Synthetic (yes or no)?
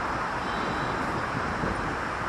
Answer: no